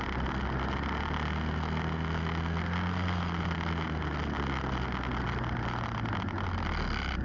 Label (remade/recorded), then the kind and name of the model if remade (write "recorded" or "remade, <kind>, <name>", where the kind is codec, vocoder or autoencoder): recorded